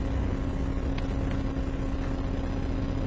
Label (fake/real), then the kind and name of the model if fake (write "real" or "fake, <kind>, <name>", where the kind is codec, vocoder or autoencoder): real